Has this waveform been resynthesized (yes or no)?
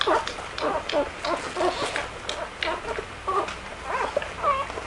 no